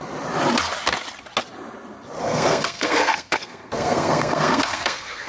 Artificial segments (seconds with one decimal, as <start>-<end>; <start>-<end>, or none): 2.2-5.3